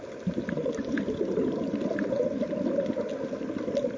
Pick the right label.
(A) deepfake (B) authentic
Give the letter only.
B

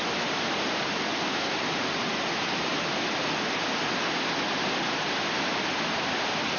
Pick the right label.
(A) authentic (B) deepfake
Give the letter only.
A